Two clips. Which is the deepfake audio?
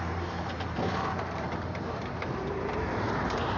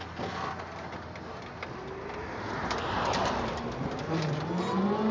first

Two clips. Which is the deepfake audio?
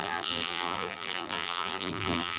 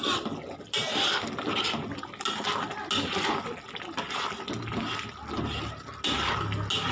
first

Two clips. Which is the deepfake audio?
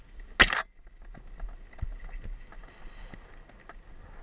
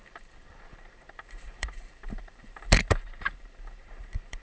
second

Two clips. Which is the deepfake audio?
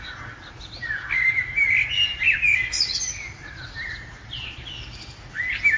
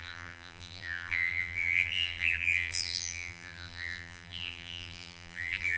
second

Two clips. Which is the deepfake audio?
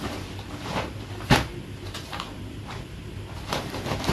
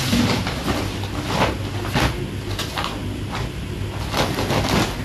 first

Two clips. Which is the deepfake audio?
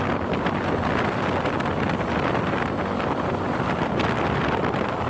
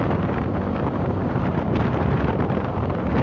second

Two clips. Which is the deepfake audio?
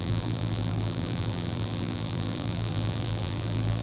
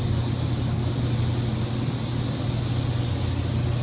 first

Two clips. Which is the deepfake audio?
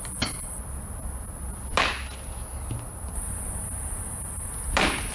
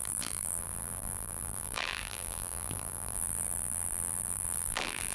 second